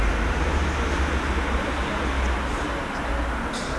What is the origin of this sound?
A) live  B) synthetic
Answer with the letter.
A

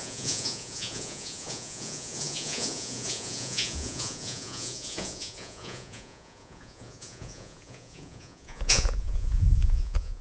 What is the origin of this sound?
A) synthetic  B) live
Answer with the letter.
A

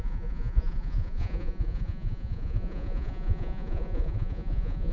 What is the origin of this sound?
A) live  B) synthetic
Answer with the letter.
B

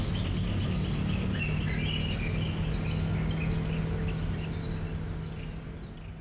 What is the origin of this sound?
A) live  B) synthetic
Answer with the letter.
A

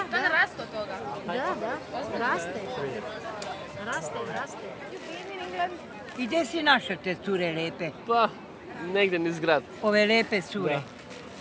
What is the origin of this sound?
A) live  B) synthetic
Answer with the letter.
A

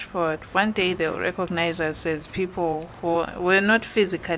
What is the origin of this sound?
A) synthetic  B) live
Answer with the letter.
A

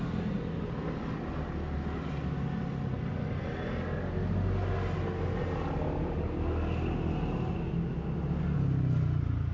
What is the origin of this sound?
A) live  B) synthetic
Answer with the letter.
A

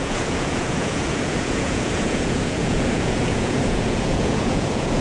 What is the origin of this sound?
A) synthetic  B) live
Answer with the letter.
A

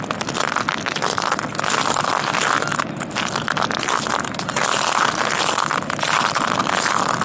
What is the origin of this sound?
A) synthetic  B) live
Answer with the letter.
B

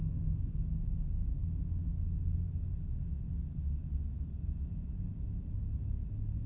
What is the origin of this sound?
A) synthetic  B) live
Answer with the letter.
B